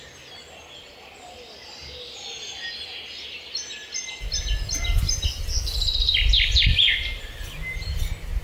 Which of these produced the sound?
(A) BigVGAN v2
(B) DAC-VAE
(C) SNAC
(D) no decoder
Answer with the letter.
D